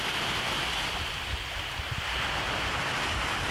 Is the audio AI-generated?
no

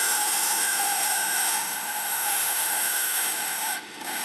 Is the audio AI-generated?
yes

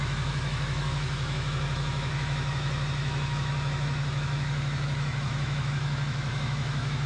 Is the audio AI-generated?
yes